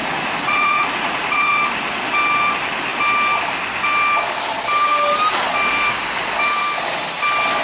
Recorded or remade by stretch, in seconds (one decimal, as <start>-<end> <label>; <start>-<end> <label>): 0.0-1.6 remade; 1.6-7.6 recorded